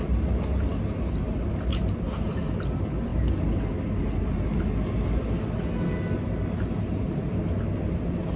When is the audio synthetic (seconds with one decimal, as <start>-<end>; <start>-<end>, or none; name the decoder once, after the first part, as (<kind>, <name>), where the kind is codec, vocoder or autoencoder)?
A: none